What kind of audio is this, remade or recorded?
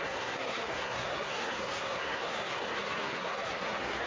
remade